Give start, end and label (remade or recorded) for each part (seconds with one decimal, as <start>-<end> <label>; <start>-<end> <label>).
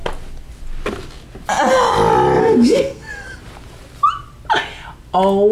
0.0-2.4 recorded; 2.4-3.1 remade; 3.1-5.5 recorded